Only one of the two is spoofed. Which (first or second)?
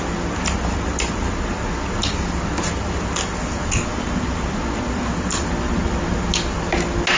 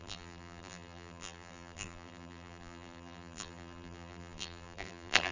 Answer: second